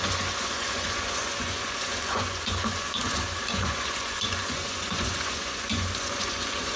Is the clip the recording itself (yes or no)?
no